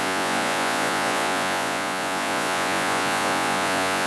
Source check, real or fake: fake